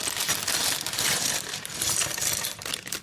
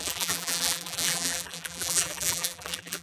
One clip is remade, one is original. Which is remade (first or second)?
second